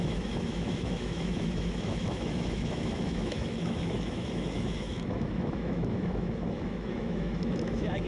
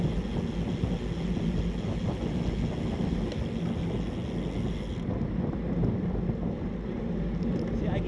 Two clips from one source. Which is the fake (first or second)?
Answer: first